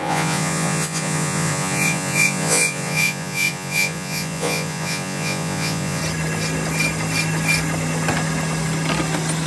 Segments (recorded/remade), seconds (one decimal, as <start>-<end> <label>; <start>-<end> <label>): 0.0-6.0 remade; 6.0-9.5 recorded